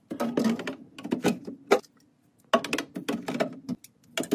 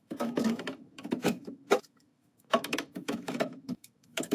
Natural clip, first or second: first